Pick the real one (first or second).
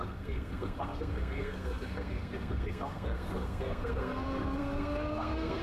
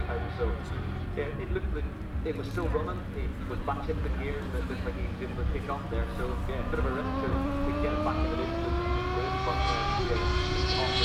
second